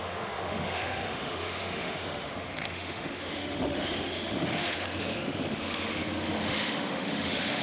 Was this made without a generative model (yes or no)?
no